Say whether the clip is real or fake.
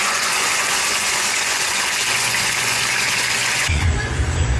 fake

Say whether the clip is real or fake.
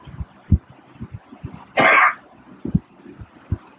real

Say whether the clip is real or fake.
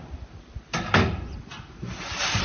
fake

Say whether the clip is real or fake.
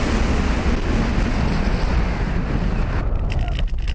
real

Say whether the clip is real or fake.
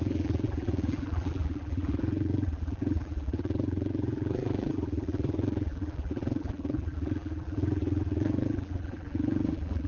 fake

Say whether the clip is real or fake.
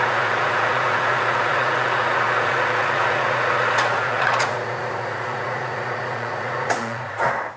fake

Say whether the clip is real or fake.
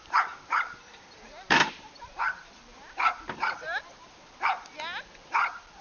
real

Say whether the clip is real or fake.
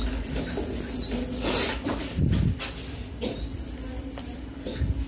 real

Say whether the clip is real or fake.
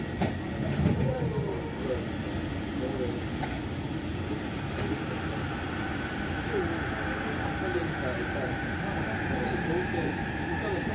real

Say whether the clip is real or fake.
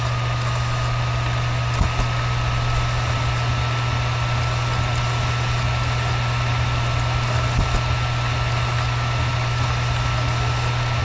real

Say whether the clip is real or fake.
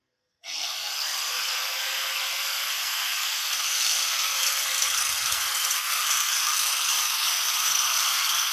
fake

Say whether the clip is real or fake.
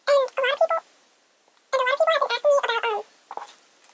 real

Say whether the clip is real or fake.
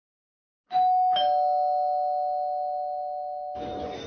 real